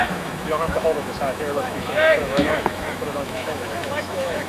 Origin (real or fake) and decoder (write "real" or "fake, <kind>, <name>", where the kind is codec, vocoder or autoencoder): fake, autoencoder, DAC-VAE